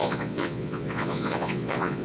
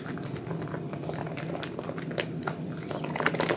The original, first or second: second